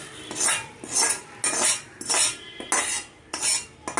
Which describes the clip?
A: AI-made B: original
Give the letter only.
B